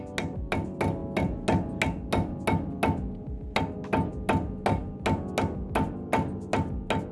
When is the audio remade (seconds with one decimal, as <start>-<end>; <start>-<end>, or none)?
none